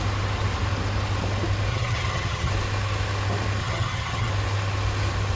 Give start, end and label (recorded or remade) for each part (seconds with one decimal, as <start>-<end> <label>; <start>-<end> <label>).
0.0-1.7 recorded; 1.7-2.5 remade; 2.5-3.6 recorded; 3.6-4.3 remade; 4.3-5.4 recorded